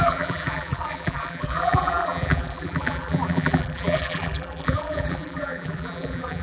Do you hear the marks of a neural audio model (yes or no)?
yes